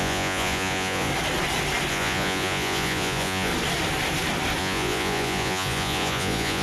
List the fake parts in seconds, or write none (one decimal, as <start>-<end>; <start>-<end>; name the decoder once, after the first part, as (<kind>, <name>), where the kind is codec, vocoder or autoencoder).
0.0-1.1 (vocoder, Vocos); 1.9-3.5; 4.6-6.6